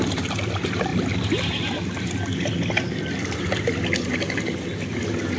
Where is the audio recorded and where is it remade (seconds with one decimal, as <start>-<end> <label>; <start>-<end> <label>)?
0.0-5.4 recorded